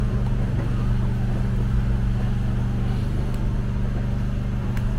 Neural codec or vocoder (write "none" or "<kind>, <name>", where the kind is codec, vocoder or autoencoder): none